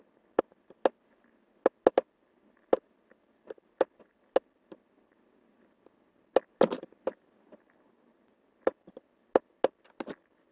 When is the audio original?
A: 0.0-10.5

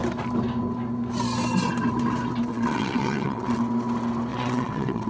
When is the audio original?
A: 0.0-2.5; 3.6-4.3

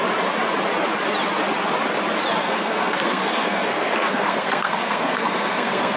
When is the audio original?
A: 0.0-2.4

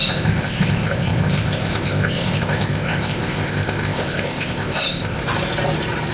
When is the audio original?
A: 5.2-6.1

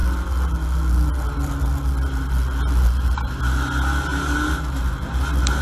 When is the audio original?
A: 0.0-5.6

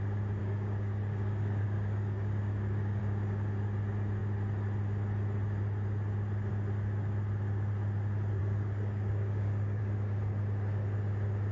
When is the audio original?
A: 0.0-0.4; 3.0-8.4; 9.8-11.5